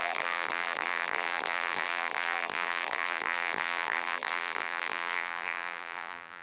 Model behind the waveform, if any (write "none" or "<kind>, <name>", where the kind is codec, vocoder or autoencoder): vocoder, BigVGAN v2